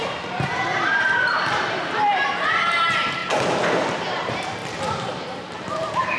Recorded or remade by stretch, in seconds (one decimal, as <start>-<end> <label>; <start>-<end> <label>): 0.0-3.2 remade; 3.2-3.8 recorded; 3.8-4.6 remade; 4.6-5.5 recorded; 5.5-6.2 remade

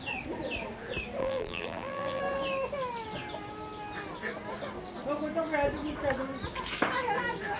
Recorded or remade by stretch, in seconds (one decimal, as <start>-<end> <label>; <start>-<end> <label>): 0.0-1.2 recorded; 1.2-2.2 remade; 2.2-7.6 recorded

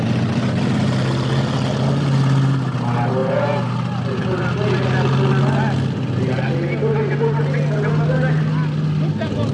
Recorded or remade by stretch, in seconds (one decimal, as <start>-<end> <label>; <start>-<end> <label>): 0.0-9.5 recorded

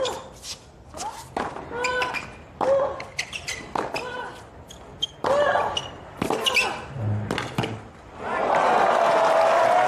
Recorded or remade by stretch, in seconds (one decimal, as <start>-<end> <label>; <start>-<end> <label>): 0.0-1.9 recorded; 1.9-3.1 remade; 3.1-9.9 recorded

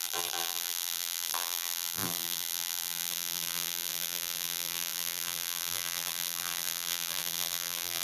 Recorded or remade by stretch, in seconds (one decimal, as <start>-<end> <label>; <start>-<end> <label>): 0.0-8.0 remade

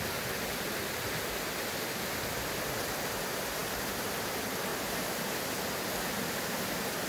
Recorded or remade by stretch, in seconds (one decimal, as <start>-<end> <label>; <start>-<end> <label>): 0.0-7.1 recorded

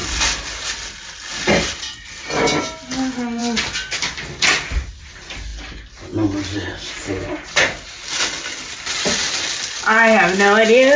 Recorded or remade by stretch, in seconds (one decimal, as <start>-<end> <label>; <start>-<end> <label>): 0.0-11.0 recorded